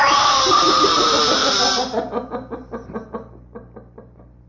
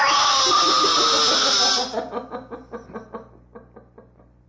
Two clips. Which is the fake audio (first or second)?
first